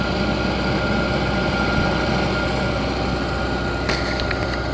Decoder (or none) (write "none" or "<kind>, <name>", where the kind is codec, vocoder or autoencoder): none